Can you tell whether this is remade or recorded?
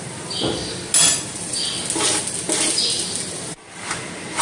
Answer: recorded